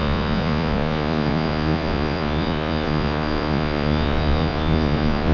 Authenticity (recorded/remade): remade